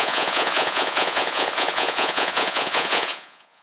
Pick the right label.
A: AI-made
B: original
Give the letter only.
A